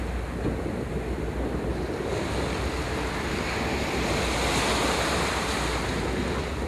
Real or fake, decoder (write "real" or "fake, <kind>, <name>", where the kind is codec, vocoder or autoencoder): real